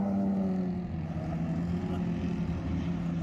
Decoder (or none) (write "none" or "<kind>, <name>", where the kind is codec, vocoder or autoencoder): none